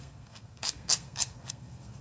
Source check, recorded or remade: remade